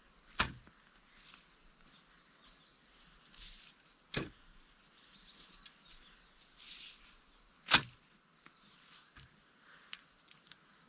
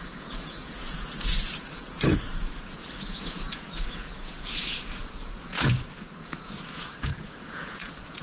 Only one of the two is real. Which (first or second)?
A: first